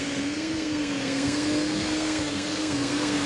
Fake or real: fake